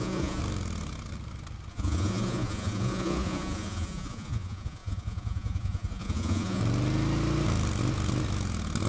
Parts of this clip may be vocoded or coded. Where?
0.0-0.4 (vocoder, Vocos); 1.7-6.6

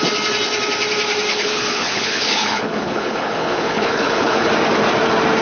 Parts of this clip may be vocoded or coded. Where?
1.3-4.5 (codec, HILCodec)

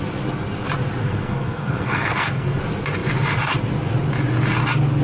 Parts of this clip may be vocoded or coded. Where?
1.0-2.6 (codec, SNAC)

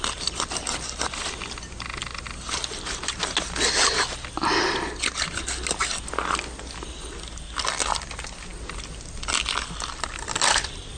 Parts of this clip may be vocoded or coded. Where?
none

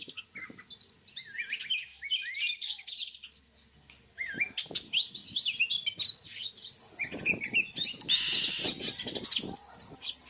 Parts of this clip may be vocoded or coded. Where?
none